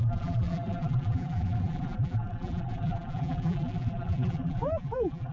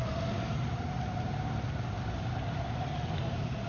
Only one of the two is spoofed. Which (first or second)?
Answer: first